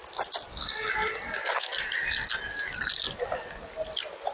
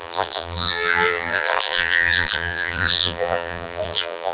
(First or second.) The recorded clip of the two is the first